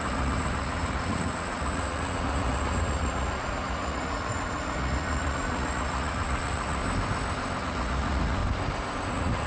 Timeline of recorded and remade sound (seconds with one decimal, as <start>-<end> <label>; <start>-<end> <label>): 0.0-6.8 remade; 6.8-7.6 recorded; 7.6-8.4 remade; 8.4-9.1 recorded; 9.1-9.5 remade